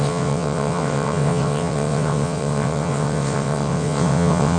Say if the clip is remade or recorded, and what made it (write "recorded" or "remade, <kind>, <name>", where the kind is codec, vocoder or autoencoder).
remade, vocoder, WaveNeXt